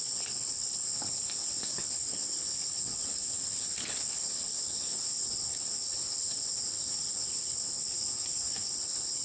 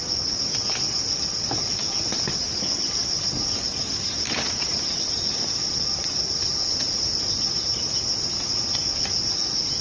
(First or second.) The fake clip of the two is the first